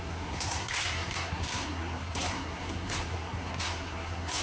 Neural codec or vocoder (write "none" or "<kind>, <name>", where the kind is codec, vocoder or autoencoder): codec, SNAC